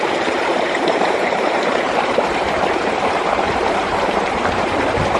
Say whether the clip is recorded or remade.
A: remade